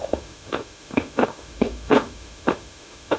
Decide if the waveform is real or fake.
fake